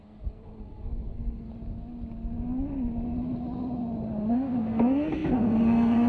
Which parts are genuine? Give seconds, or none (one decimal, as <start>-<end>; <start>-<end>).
1.5-4.3